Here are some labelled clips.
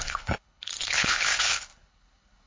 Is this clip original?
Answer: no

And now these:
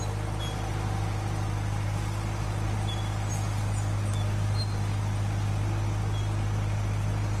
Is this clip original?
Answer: yes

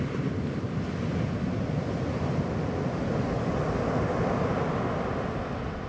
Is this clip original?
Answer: yes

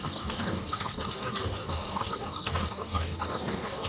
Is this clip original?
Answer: no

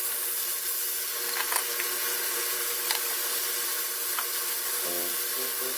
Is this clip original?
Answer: yes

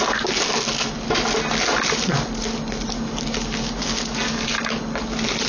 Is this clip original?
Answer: yes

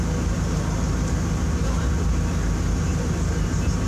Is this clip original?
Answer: yes